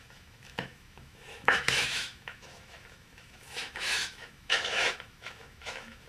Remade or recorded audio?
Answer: remade